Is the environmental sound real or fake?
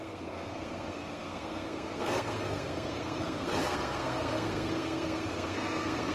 fake